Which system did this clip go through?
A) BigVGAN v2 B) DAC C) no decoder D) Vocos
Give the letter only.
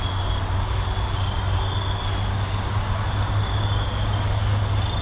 C